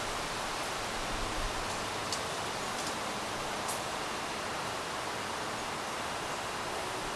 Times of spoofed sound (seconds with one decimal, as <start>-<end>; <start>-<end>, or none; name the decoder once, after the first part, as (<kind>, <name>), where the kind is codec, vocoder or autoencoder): none